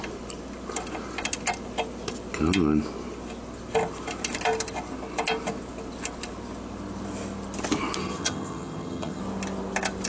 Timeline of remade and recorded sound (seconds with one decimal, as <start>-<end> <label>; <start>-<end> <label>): 0.0-8.0 recorded; 8.0-9.2 remade; 9.2-10.1 recorded

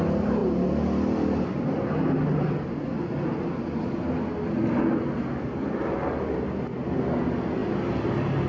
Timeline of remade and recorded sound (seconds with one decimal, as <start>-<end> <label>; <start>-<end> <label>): 0.0-8.5 recorded

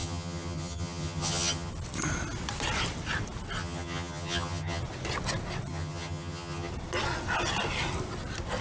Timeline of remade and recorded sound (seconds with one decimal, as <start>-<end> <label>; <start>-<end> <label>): 0.0-1.7 remade; 1.7-3.6 recorded; 3.6-4.8 remade; 4.8-5.7 recorded; 5.7-6.7 remade; 6.7-8.6 recorded

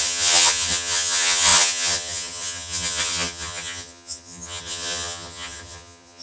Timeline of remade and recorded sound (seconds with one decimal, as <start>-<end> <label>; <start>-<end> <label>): 0.0-6.2 remade

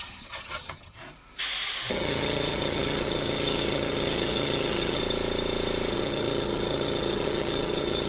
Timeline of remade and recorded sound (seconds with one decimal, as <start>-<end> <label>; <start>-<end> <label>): 0.0-1.0 remade; 1.0-1.9 recorded; 1.9-5.0 remade; 5.0-5.9 recorded; 5.9-8.1 remade

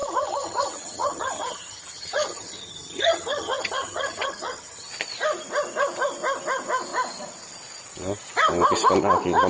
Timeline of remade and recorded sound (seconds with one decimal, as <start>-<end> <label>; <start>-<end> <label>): 0.0-4.9 remade; 4.9-9.5 recorded

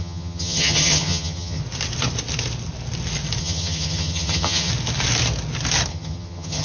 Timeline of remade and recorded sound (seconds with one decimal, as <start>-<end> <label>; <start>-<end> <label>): 0.0-1.6 remade; 1.6-3.4 recorded; 3.4-4.7 remade; 4.7-5.9 recorded; 5.9-6.6 remade